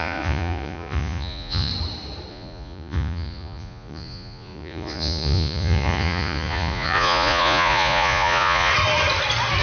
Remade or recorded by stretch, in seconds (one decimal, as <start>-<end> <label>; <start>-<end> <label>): 0.0-1.7 remade; 1.7-2.3 recorded; 2.3-8.7 remade; 8.7-9.6 recorded

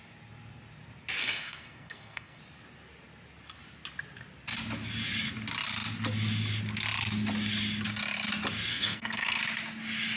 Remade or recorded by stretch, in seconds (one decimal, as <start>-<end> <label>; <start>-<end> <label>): 0.0-1.2 recorded; 1.2-2.4 remade; 2.4-8.7 recorded; 8.7-9.4 remade; 9.4-10.2 recorded

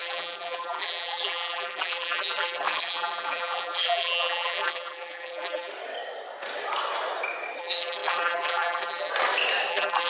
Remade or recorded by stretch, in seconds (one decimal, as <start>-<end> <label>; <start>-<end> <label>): 0.0-5.7 remade; 5.7-7.6 recorded; 7.6-9.1 remade; 9.1-9.7 recorded; 9.7-10.1 remade

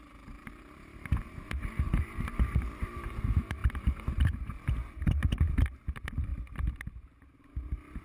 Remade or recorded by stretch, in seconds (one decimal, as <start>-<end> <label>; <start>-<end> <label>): 0.0-6.3 remade; 6.3-8.0 recorded